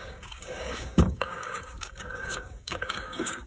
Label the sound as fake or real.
fake